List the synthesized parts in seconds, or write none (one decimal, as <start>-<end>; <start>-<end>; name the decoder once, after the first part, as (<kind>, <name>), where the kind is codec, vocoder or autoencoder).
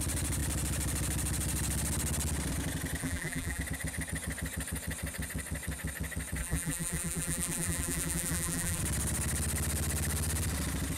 3.0-3.6 (vocoder, BigVGAN v2); 6.4-8.8